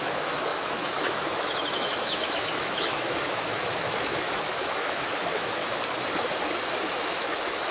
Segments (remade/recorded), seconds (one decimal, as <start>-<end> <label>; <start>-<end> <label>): 0.0-5.6 remade; 5.6-6.8 recorded; 6.8-7.7 remade